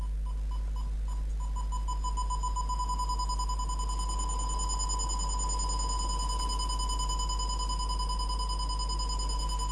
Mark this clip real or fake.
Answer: real